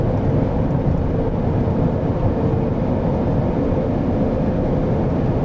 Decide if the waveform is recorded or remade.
recorded